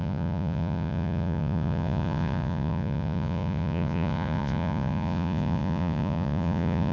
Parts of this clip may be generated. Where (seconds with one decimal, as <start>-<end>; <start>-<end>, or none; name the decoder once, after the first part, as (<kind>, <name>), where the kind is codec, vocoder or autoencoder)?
0.0-6.9 (vocoder, Vocos)